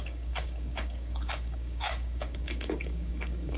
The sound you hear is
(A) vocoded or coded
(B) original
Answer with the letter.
A